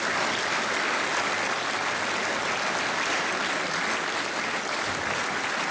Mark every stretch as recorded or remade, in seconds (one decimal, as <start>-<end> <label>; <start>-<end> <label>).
0.0-5.7 recorded